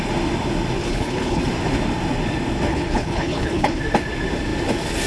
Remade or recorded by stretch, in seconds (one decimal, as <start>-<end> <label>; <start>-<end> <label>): 0.0-0.8 recorded; 0.8-1.4 remade; 1.4-2.7 recorded; 2.7-3.8 remade; 3.8-5.1 recorded